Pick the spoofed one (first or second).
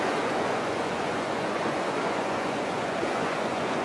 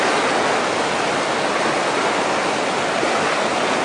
first